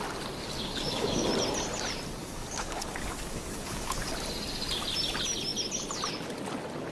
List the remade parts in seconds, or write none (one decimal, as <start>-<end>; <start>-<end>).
0.4-1.3; 2.2-4.0